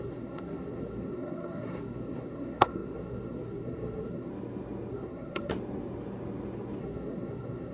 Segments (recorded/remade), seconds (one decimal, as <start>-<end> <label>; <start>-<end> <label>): 0.0-4.3 remade; 4.3-4.9 recorded; 4.9-5.5 remade; 5.5-6.8 recorded; 6.8-7.7 remade